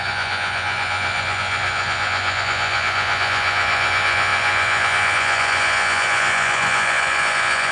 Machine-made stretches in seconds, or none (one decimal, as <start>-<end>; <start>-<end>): 0.0-7.7